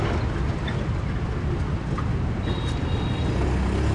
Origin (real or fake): real